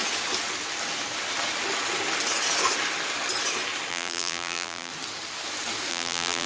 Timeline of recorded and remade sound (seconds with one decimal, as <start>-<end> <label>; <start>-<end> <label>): 0.0-3.9 recorded; 3.9-4.9 remade; 4.9-5.9 recorded; 5.9-6.5 remade